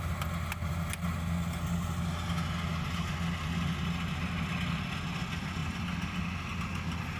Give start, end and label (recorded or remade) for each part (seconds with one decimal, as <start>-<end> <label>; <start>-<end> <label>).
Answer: 0.0-5.6 recorded; 5.6-6.2 remade; 6.2-7.2 recorded